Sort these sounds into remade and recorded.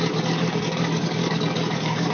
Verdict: remade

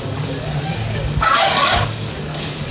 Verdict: remade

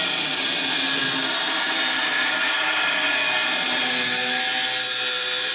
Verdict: recorded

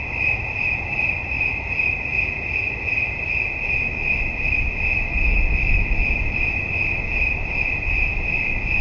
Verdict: recorded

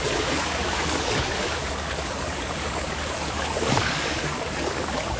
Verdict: remade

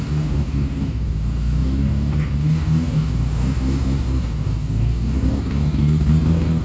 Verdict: remade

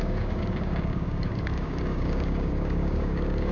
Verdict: remade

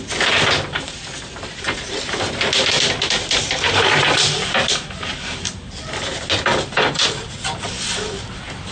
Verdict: recorded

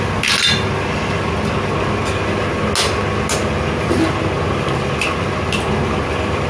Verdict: recorded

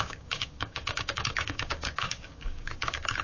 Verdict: remade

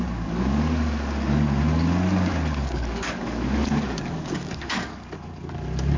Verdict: remade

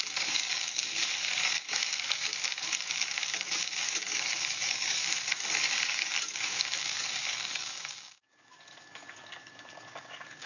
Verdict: remade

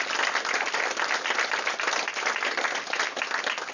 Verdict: recorded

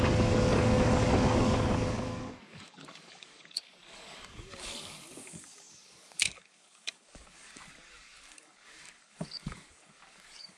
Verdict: remade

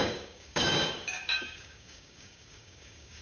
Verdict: remade